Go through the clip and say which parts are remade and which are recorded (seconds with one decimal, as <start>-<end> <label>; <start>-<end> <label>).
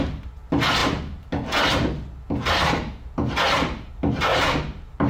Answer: 0.0-5.1 recorded